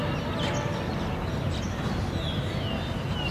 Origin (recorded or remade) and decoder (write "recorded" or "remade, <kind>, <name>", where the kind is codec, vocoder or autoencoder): recorded